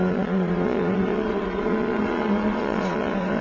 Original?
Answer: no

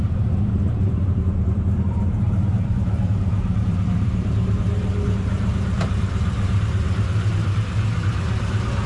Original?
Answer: no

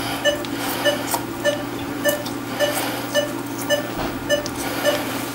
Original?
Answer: yes